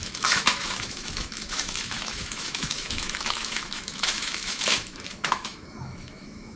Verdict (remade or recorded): remade